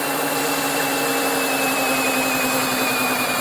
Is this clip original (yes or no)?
yes